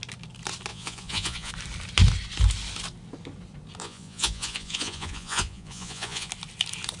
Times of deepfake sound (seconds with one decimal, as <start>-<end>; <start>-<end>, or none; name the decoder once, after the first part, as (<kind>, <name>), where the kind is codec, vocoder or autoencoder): 0.7-1.5 (vocoder, Vocos); 3.8-6.3